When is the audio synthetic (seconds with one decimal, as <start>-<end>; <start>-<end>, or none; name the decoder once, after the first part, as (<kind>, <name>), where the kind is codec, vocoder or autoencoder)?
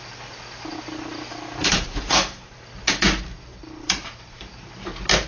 1.6-2.7 (vocoder, BigVGAN v2); 3.5-4.7